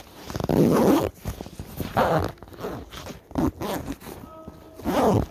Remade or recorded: recorded